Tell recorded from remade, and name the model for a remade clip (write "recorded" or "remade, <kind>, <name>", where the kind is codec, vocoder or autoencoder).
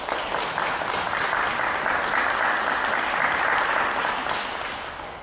recorded